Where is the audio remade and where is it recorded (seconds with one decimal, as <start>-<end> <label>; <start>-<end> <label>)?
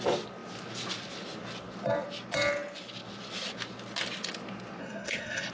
0.0-4.8 recorded; 4.8-5.5 remade